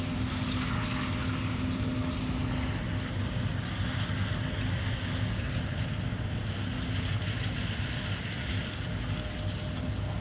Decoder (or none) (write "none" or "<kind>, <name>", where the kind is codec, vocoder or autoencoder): none